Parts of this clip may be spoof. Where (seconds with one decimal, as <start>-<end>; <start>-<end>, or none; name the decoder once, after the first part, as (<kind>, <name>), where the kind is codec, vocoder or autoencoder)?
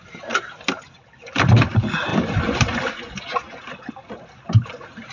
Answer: none